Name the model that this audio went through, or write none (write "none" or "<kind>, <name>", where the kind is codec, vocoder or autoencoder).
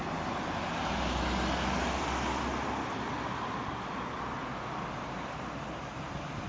none